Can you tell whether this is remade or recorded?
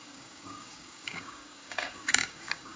remade